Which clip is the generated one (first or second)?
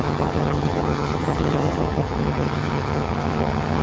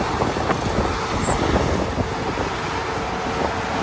first